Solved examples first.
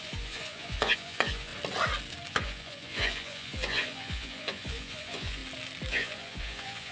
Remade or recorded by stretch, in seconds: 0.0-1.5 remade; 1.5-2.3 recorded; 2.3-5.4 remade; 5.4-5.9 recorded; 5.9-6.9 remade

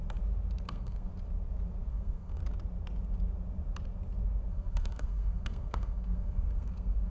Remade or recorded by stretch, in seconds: 0.0-0.7 recorded; 0.7-1.1 remade; 1.1-1.9 recorded; 1.9-2.4 remade; 2.4-4.5 recorded; 4.5-7.1 remade

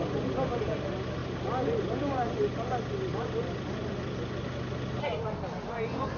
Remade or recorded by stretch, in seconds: 0.0-6.2 recorded

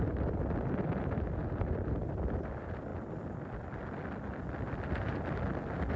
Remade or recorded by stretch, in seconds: 0.0-6.0 recorded

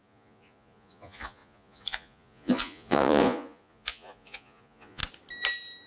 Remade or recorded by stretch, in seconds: 0.0-5.0 remade; 5.0-5.9 recorded

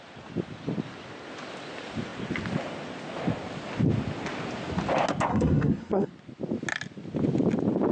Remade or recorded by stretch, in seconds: 0.0-5.3 recorded; 5.3-6.1 remade; 6.1-7.9 recorded

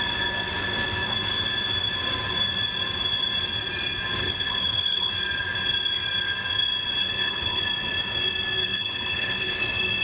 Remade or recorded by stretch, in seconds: 0.0-4.2 recorded; 4.2-5.1 remade; 5.1-7.0 recorded; 7.0-7.6 remade; 7.6-8.6 recorded; 8.6-9.6 remade; 9.6-10.0 recorded